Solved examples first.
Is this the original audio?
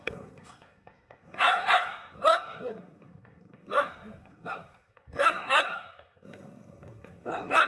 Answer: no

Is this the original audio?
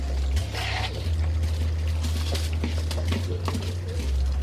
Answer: yes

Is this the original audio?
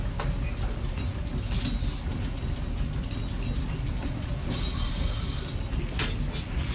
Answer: yes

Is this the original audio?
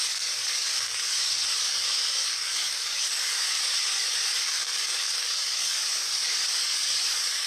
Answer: no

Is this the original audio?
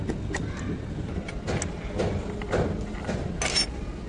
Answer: yes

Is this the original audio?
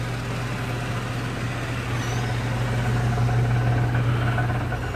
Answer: yes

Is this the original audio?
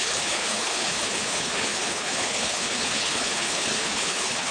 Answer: no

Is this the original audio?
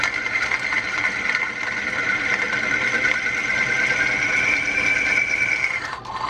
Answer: yes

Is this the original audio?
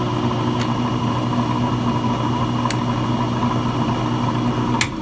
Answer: yes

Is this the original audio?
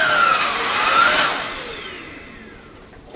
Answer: yes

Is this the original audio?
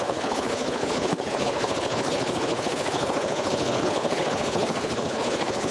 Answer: no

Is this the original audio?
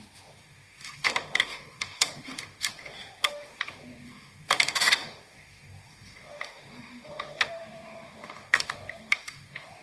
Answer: no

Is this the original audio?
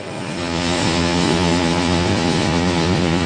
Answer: no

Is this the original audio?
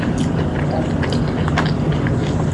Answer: yes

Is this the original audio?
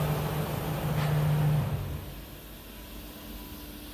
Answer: yes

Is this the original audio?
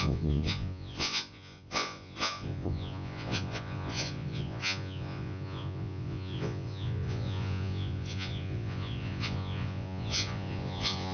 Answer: no